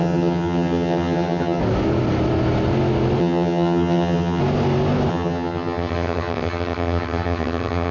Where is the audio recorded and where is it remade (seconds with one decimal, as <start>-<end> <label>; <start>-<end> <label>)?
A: 0.0-1.6 remade; 1.6-3.2 recorded; 3.2-4.4 remade; 4.4-5.1 recorded; 5.1-7.9 remade